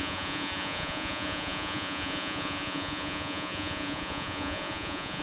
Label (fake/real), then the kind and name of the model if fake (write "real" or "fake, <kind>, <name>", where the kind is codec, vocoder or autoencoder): fake, vocoder, Vocos